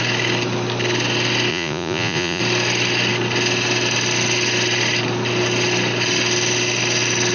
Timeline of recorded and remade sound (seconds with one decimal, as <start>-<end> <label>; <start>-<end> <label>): 0.0-1.5 recorded; 1.5-2.4 remade; 2.4-7.3 recorded